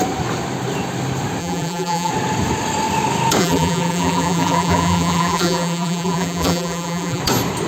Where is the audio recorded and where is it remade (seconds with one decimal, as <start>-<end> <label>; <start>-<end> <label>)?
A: 0.0-1.4 recorded; 1.4-2.1 remade; 2.1-3.4 recorded; 3.4-7.2 remade; 7.2-7.7 recorded